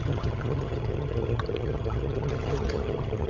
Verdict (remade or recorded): remade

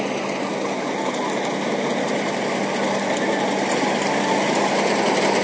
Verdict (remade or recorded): recorded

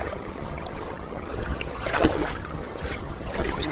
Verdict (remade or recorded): remade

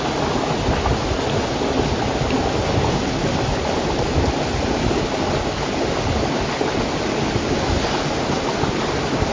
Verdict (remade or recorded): recorded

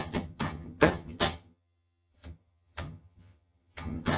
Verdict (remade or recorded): remade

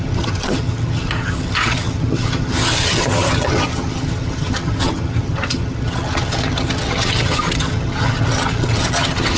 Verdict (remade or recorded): remade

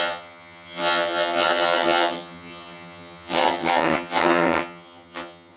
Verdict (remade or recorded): remade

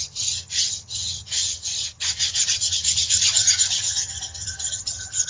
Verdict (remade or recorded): remade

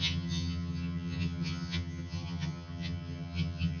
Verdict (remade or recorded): remade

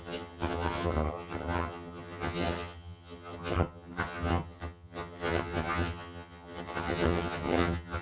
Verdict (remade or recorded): remade